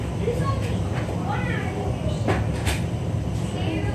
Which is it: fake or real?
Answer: real